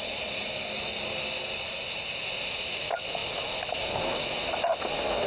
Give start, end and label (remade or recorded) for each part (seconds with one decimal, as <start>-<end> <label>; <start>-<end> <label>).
0.0-5.3 recorded